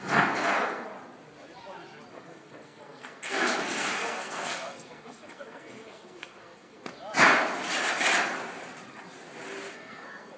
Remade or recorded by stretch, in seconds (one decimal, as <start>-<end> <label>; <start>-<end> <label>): 0.0-0.9 remade; 0.9-2.1 recorded; 2.1-6.8 remade; 6.8-9.7 recorded; 9.7-10.4 remade

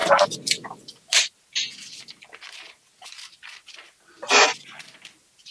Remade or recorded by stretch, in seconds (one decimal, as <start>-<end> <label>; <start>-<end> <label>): 0.0-5.5 recorded